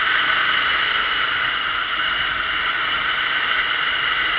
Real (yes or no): yes